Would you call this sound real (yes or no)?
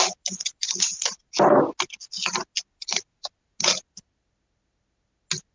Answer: yes